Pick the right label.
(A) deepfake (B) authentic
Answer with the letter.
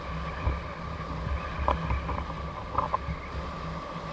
B